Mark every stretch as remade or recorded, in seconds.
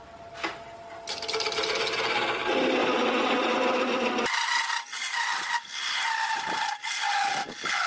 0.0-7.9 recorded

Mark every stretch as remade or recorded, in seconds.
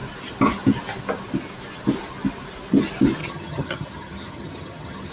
0.0-3.2 recorded; 3.2-5.1 remade